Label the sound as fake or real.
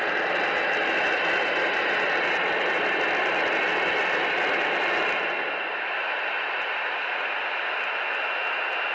real